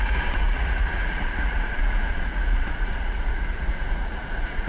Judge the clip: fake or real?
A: fake